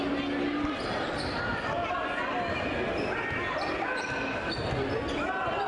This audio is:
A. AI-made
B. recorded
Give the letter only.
B